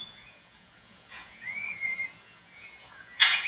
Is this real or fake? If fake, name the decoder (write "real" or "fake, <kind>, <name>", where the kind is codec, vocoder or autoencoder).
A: fake, vocoder, Vocos